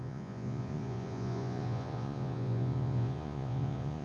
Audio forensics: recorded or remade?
remade